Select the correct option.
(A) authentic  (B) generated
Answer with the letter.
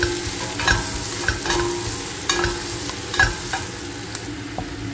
A